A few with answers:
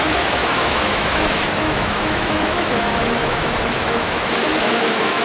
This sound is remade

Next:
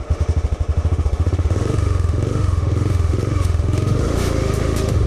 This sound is remade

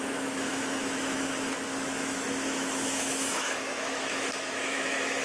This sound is remade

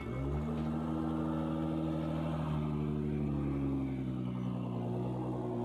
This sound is recorded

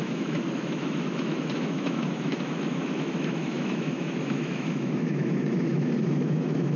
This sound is remade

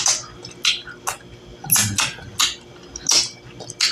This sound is recorded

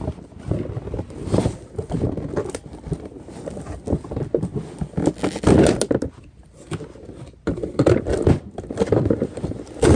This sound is recorded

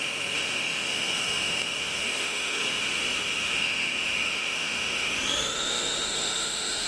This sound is remade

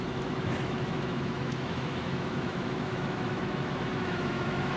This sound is remade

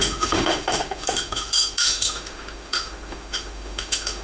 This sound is remade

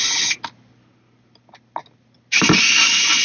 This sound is recorded